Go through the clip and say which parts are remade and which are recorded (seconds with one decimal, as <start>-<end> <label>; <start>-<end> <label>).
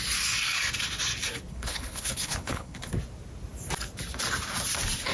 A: 0.0-1.5 recorded; 1.5-2.9 remade; 2.9-5.1 recorded